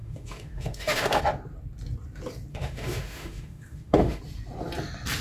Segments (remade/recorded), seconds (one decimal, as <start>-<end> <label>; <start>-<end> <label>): 0.0-1.2 remade; 1.2-2.5 recorded; 2.5-4.2 remade; 4.2-5.2 recorded